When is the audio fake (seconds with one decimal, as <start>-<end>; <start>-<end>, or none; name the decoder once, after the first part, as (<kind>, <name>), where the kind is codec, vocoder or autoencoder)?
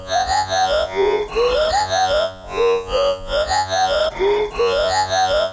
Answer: 0.0-1.2 (vocoder, Vocos); 1.8-4.0; 4.6-5.5